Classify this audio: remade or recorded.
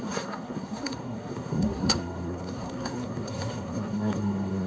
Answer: remade